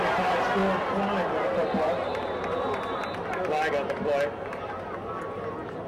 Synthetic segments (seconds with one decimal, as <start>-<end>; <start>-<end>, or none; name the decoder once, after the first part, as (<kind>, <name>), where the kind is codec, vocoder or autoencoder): none